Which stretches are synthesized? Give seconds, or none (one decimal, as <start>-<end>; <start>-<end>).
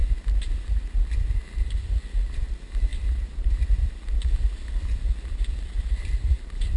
none